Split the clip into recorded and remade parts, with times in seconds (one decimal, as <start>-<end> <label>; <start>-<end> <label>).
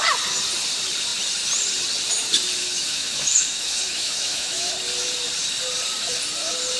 0.0-2.6 recorded; 2.6-4.7 remade; 4.7-6.8 recorded